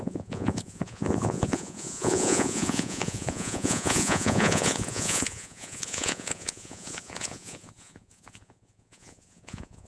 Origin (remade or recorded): remade